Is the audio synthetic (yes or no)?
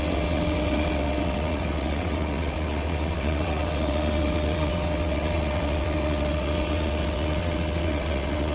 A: yes